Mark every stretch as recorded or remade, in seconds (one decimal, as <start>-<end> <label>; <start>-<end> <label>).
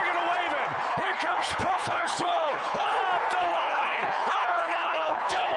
0.0-0.9 recorded; 0.9-3.0 remade; 3.0-3.4 recorded; 3.4-5.6 remade